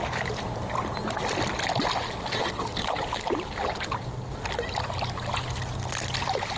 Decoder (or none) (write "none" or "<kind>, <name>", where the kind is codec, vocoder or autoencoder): none